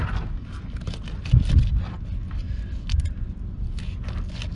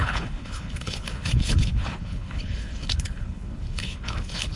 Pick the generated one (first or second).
second